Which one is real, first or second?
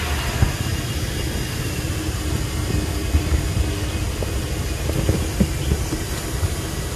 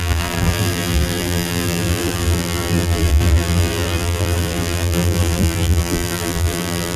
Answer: first